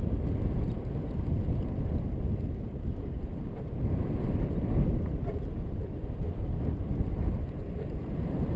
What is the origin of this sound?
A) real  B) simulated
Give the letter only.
A